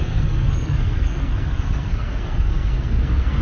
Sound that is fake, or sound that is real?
fake